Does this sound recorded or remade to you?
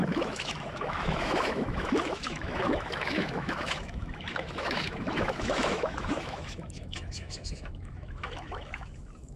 remade